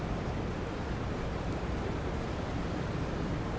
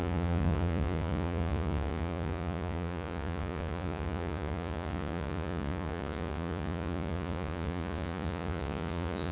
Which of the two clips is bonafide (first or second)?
first